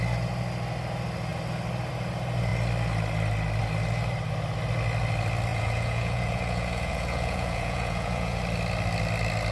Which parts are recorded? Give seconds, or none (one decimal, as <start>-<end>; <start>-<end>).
0.0-5.5; 8.4-9.5